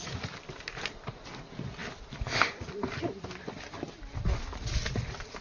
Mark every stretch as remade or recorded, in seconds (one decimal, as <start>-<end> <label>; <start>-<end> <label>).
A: 0.0-5.4 recorded